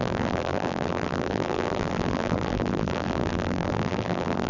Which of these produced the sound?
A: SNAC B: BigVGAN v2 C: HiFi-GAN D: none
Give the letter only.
B